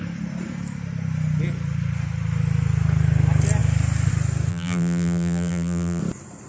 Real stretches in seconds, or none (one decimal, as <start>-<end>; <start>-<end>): 0.0-4.5; 6.0-6.5